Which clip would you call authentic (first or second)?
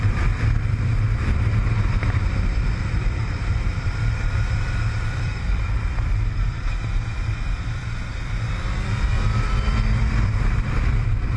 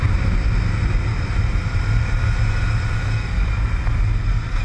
second